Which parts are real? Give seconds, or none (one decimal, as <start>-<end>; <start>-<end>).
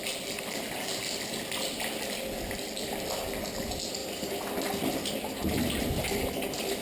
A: 0.0-6.8